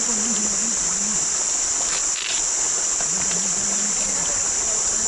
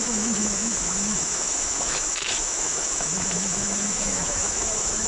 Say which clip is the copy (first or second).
second